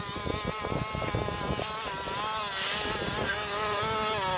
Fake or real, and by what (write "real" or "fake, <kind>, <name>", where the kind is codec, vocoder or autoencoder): real